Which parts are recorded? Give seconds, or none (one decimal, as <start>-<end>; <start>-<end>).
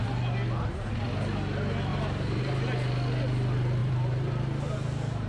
0.0-1.9; 2.4-3.8